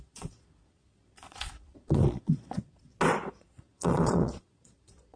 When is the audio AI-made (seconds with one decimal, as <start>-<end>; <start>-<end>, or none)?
0.0-2.9; 3.4-5.2